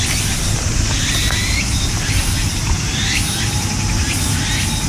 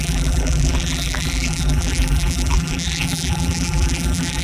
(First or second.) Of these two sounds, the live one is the first